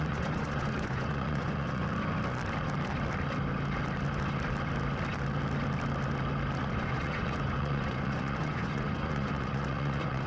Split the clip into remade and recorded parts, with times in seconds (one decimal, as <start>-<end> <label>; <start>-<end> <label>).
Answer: 0.0-1.8 remade; 1.8-6.6 recorded; 6.6-10.3 remade